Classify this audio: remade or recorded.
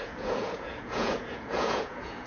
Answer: remade